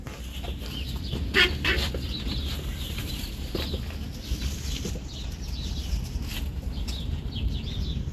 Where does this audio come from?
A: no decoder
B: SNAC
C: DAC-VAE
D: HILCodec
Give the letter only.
A